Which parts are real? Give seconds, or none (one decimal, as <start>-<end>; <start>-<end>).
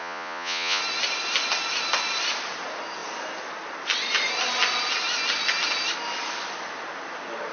0.8-7.5